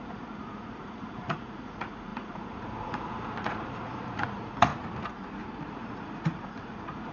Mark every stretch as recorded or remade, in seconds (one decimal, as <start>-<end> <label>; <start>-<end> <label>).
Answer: 0.0-4.7 remade; 4.7-5.7 recorded; 5.7-7.1 remade